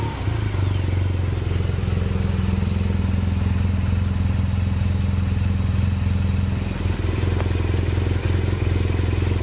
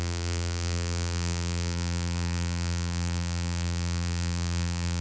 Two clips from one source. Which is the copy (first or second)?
second